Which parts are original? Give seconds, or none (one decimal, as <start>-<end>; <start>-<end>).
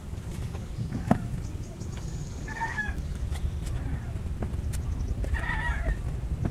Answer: 3.4-6.5